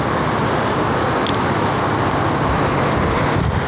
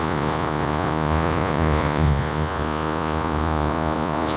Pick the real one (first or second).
first